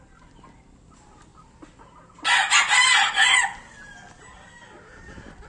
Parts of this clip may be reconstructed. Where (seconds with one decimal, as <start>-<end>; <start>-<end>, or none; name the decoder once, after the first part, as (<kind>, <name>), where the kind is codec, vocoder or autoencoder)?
none